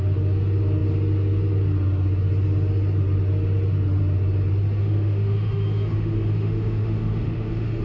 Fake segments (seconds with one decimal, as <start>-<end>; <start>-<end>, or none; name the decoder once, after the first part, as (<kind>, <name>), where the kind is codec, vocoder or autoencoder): 4.8-7.8 (autoencoder, DAC-VAE)